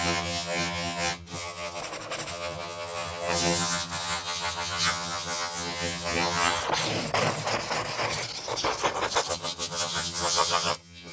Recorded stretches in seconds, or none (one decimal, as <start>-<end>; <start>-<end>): 1.8-2.3; 6.6-9.3